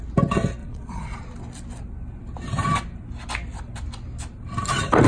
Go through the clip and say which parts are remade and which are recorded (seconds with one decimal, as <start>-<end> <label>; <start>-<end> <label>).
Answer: 0.0-0.6 recorded; 0.6-1.2 remade; 1.2-5.1 recorded